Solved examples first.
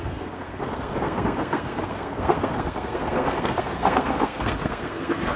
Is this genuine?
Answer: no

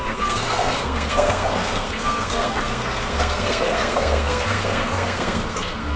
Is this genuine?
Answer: no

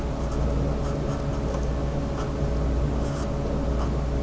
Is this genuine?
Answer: yes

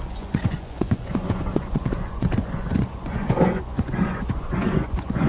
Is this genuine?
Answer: no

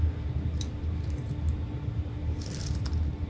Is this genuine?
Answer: yes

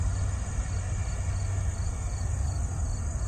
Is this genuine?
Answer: yes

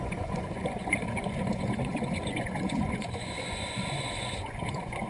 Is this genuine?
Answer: no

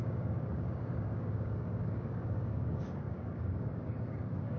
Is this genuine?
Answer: no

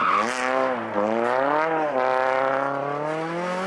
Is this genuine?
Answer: yes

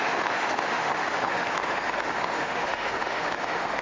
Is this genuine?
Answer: no